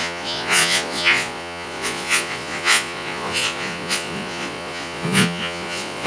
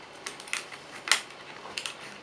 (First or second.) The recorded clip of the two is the second